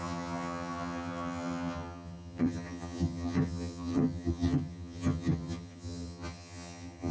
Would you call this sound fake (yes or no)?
yes